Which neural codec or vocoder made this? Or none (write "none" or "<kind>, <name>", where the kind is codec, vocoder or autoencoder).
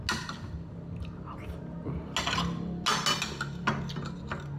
none